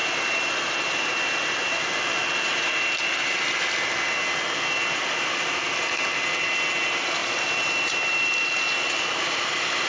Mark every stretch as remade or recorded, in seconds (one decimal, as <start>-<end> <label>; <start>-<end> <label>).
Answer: 0.0-9.9 recorded